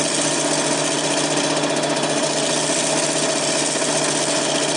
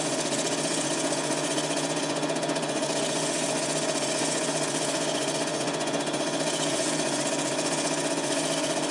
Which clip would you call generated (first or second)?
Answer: second